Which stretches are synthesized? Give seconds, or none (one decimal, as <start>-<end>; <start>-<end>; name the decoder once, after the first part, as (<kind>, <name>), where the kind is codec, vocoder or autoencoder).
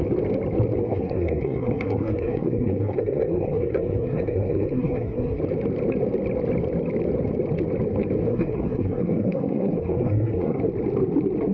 0.8-5.4 (codec, SNAC); 8.3-10.6